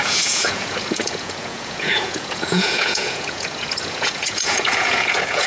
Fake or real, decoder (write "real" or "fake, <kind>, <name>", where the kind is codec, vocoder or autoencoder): fake, vocoder, Vocos